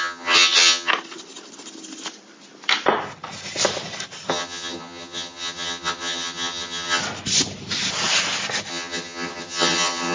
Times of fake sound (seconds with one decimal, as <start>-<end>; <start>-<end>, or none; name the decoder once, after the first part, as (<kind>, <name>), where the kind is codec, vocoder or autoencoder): 0.0-0.9 (vocoder, HiFi-GAN); 4.3-7.0; 8.7-10.1